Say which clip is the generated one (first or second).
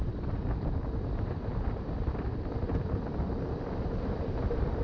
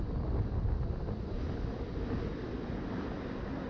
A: first